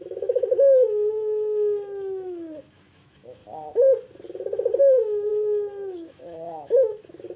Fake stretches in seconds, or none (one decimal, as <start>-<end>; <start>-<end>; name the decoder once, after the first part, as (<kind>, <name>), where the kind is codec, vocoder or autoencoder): 0.0-3.4 (autoencoder, DAC-VAE); 4.8-7.4